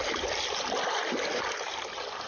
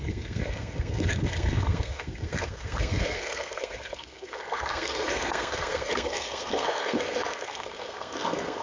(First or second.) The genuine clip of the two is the first